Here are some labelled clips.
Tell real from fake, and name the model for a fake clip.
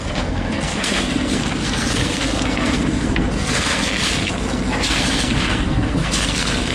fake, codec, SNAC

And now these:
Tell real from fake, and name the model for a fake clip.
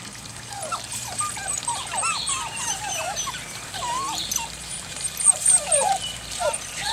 fake, vocoder, BigVGAN v2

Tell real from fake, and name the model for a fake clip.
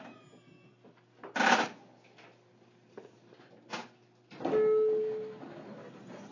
real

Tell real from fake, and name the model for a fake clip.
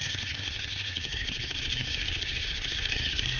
fake, codec, SNAC